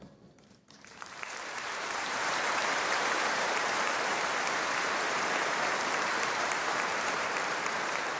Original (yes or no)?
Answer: no